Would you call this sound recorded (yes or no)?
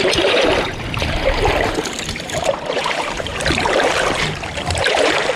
no